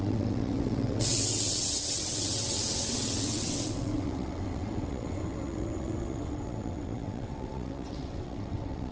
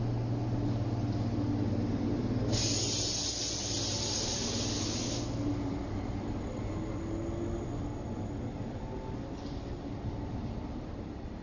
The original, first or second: second